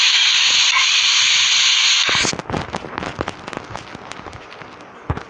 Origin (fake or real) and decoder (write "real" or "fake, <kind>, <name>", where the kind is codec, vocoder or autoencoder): real